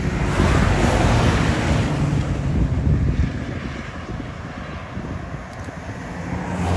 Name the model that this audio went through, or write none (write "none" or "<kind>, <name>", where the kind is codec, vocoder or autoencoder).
none